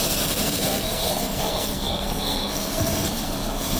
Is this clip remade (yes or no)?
yes